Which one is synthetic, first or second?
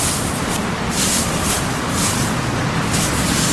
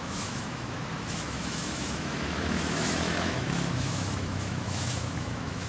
second